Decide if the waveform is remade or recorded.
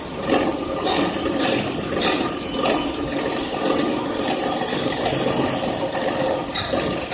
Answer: remade